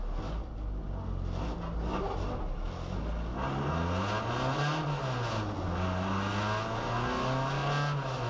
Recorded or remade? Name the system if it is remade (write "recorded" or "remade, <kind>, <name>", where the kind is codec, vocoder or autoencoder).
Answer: recorded